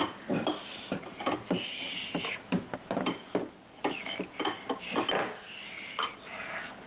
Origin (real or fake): real